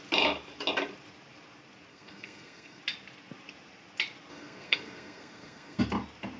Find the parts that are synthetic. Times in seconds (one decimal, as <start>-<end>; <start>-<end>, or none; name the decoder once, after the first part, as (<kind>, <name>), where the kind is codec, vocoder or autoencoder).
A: 1.9-2.8 (codec, SNAC); 4.3-5.8